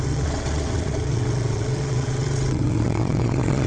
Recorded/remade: remade